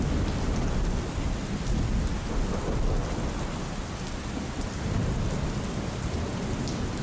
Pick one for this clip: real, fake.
real